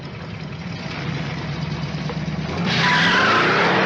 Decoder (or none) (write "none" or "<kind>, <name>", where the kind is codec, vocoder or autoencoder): none